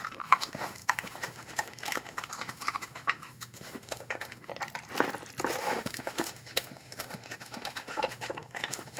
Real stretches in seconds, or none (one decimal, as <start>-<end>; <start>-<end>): 4.5-5.6